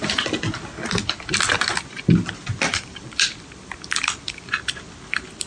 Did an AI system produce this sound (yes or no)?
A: no